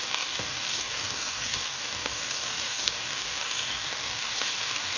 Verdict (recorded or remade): remade